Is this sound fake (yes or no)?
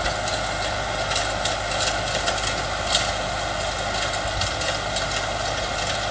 no